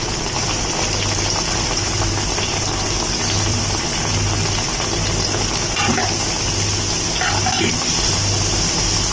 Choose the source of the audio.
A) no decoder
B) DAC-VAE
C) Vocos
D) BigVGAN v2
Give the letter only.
D